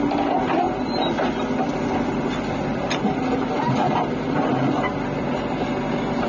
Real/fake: real